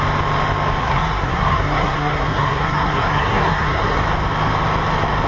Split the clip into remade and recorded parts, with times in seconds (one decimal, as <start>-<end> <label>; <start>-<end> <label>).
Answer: 0.0-0.8 recorded; 0.8-4.0 remade; 4.0-5.3 recorded